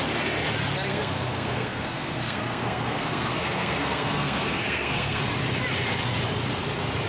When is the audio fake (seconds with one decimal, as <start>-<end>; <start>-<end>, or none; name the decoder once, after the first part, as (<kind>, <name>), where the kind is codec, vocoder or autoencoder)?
0.9-5.2 (codec, SNAC)